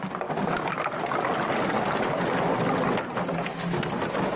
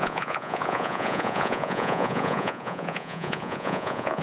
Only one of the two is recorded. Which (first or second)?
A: first